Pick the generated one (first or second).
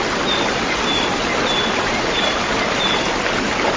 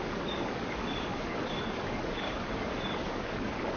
second